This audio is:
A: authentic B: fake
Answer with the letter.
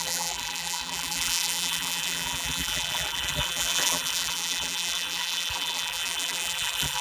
B